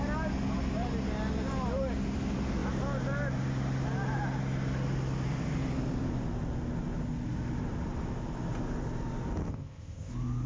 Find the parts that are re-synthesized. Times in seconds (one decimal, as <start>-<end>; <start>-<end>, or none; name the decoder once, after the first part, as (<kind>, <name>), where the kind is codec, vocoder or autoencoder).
9.5-10.1 (codec, ZipCodec)